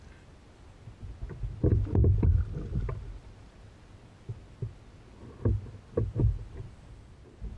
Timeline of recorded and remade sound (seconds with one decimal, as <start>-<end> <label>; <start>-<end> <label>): 0.0-7.6 recorded

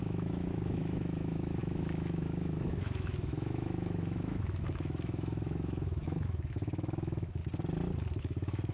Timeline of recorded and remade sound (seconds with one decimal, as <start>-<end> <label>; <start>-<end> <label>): 0.0-7.4 remade; 7.4-8.2 recorded; 8.2-8.7 remade

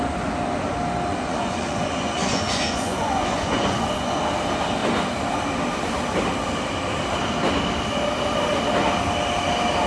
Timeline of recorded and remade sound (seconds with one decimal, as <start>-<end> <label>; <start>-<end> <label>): 0.0-1.1 recorded; 1.1-4.2 remade; 4.2-9.9 recorded

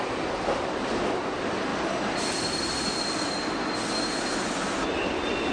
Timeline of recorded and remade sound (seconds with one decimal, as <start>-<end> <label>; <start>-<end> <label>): 0.0-5.5 recorded